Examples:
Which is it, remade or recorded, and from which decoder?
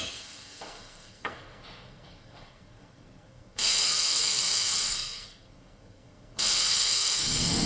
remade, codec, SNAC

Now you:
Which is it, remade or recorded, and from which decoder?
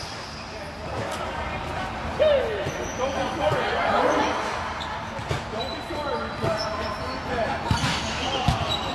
recorded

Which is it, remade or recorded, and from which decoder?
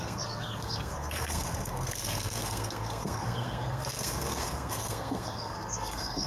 remade, codec, SNAC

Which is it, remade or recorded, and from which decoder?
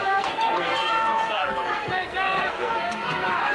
remade, codec, SNAC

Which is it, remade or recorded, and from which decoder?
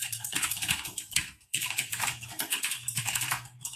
remade, codec, SNAC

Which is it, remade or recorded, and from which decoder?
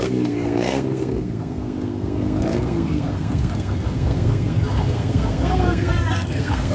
remade, codec, SNAC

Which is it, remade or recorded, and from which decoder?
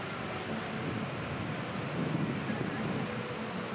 recorded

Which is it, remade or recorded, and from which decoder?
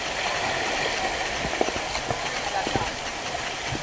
recorded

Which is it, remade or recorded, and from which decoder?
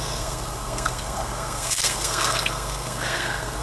remade, codec, SNAC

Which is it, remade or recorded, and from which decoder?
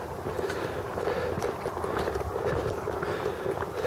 recorded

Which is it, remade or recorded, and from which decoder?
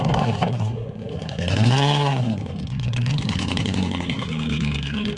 remade, codec, SNAC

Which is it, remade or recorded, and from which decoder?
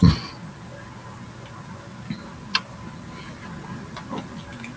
recorded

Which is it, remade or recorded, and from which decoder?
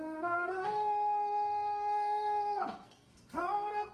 remade, codec, SNAC